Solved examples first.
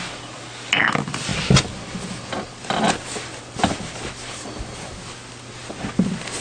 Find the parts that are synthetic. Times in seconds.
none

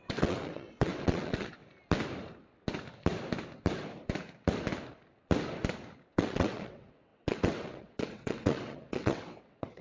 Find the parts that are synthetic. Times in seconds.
0.0-1.6 (vocoder, WaveNeXt); 6.0-9.8

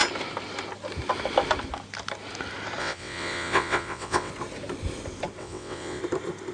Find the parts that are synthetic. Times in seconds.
2.8-4.3 (vocoder, WaveNeXt); 5.4-6.0